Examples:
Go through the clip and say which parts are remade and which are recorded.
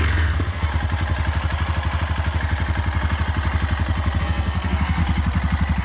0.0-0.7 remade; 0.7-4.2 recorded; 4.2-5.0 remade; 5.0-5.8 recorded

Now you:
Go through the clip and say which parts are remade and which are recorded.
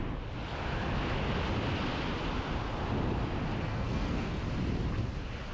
0.0-3.7 recorded; 3.7-4.4 remade; 4.4-5.5 recorded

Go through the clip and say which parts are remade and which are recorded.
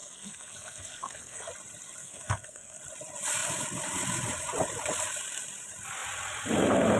0.0-1.5 remade; 1.5-2.0 recorded; 2.0-2.8 remade; 2.8-7.0 recorded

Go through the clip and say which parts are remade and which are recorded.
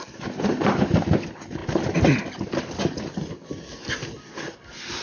0.0-5.0 recorded